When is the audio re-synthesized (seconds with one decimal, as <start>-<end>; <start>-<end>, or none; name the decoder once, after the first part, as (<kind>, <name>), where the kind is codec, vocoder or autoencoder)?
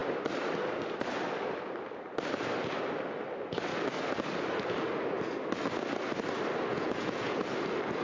6.7-7.4 (vocoder, Vocos)